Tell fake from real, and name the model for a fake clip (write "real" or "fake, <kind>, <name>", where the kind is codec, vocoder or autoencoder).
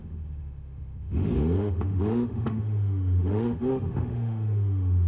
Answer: fake, autoencoder, DAC-VAE